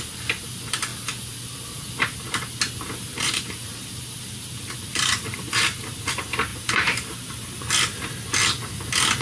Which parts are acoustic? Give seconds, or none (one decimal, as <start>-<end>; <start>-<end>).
0.0-3.1; 6.1-6.5; 7.6-9.2